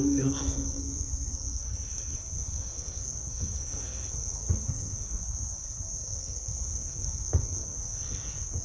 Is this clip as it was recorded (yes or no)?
no